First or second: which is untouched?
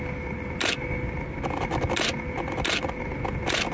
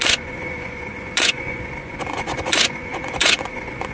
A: first